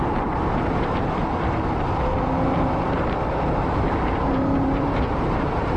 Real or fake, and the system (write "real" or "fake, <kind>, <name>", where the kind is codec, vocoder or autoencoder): fake, vocoder, BigVGAN v2